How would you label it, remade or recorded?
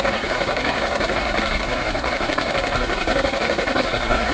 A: remade